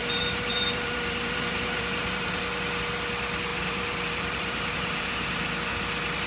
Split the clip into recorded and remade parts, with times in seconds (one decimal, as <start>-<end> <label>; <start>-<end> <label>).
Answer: 0.0-2.4 remade; 2.4-3.5 recorded; 3.5-5.1 remade; 5.1-6.3 recorded

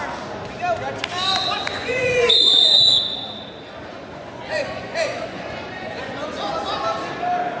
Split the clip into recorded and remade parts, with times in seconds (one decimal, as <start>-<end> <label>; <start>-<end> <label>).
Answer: 0.0-1.7 recorded; 1.7-3.0 remade; 3.0-3.9 recorded; 3.9-6.6 remade; 6.6-7.6 recorded

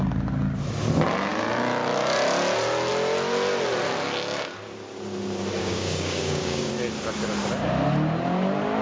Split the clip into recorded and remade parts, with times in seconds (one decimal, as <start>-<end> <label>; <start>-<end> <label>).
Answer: 0.0-5.6 recorded; 5.6-6.7 remade; 6.7-8.8 recorded

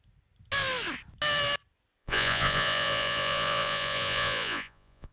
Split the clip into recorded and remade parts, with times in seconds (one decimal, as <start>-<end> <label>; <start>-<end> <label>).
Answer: 0.0-2.0 recorded; 2.0-5.1 remade

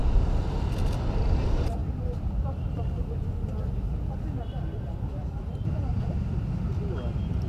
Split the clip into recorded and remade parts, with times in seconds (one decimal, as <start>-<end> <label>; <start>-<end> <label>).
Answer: 0.0-5.2 recorded; 5.2-5.7 remade; 5.7-7.5 recorded

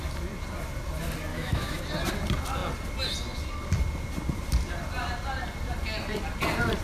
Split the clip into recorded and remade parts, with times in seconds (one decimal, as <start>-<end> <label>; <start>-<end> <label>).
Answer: 0.0-1.3 recorded; 1.3-1.8 remade; 1.8-6.8 recorded

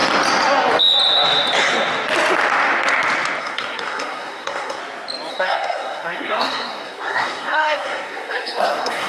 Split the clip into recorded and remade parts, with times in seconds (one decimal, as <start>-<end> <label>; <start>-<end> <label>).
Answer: 0.0-3.4 recorded; 3.4-4.8 remade; 4.8-5.3 recorded; 5.3-9.1 remade

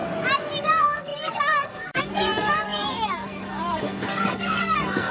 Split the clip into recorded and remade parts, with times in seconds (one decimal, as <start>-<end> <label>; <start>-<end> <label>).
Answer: 0.0-0.6 recorded; 0.6-5.1 remade